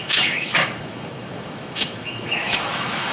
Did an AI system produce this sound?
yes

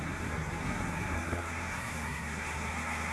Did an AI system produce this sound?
yes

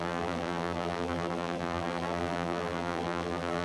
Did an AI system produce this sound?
yes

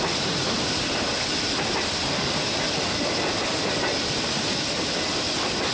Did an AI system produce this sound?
no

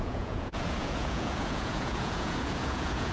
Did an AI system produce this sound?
yes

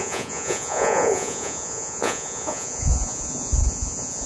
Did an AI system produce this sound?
yes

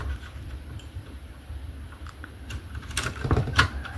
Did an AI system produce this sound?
yes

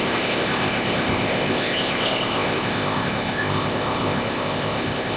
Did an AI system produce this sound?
yes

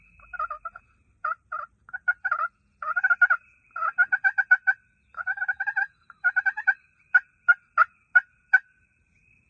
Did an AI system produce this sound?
no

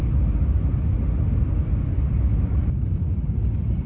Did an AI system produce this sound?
no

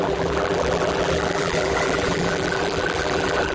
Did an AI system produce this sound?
yes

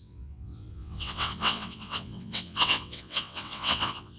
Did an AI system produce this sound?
yes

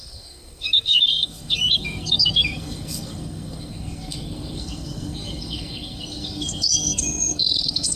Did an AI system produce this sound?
yes